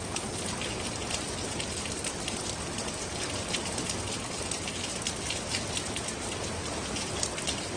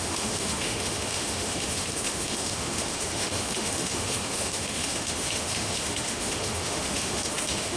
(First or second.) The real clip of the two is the first